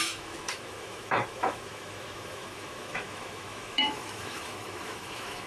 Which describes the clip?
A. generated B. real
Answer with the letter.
A